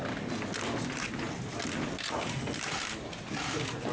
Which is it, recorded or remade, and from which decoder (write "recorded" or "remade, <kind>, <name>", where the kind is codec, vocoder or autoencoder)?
recorded